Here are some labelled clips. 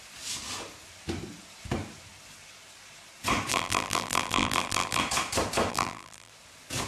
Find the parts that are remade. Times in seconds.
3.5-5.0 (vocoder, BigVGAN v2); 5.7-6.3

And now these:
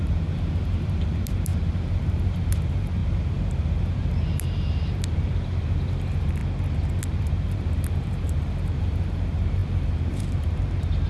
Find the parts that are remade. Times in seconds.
0.0-6.4 (vocoder, BigVGAN v2); 7.0-11.1

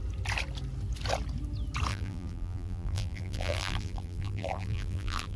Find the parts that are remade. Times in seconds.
1.9-5.4 (vocoder, BigVGAN v2)

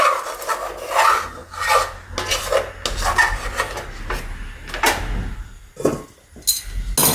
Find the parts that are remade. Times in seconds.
none

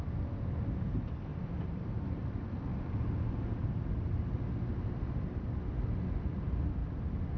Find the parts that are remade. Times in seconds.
1.3-2.2 (vocoder, BigVGAN v2); 2.7-3.9

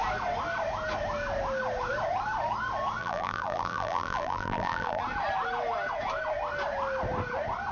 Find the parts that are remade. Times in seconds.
3.0-5.0 (vocoder, BigVGAN v2)

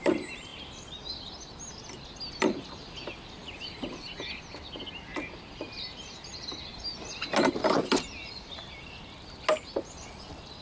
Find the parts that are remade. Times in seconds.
3.4-4.1 (vocoder, BigVGAN v2)